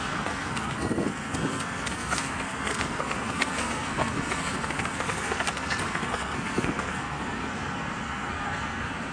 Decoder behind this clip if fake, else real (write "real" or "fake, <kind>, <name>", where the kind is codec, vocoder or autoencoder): fake, codec, SNAC